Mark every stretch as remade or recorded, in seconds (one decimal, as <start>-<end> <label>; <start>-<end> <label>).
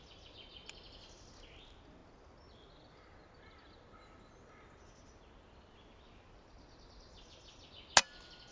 0.0-8.5 recorded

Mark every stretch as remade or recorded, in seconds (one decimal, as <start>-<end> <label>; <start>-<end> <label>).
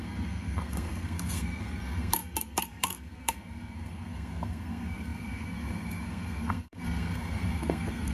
0.0-8.1 remade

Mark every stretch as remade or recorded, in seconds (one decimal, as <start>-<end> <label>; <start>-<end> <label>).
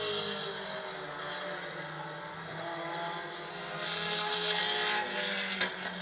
0.0-3.5 recorded; 3.5-4.6 remade; 4.6-6.0 recorded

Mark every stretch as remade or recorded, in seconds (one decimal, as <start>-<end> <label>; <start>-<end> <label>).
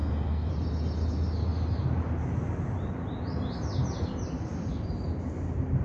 0.0-0.5 remade; 0.5-5.8 recorded